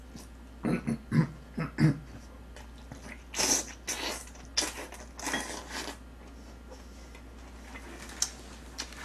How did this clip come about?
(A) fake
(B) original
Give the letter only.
B